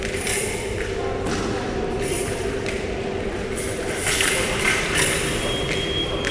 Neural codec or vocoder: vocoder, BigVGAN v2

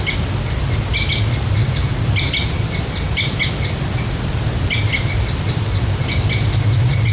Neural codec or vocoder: none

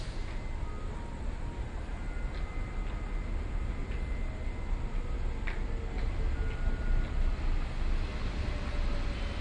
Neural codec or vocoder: none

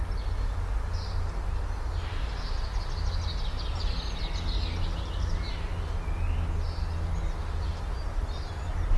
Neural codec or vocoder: none